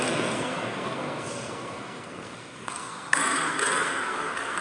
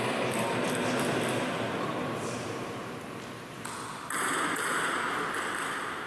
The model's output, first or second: first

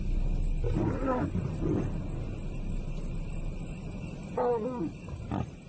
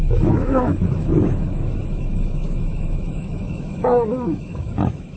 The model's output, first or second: second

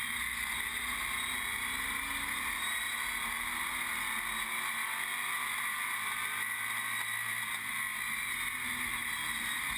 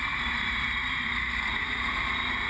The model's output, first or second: second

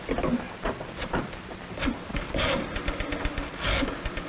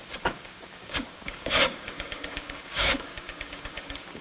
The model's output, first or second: second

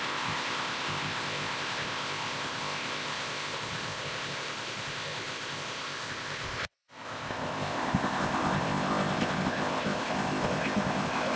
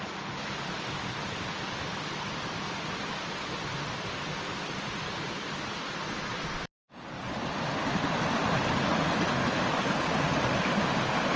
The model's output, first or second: first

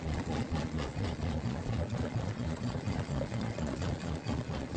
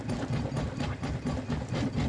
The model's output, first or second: first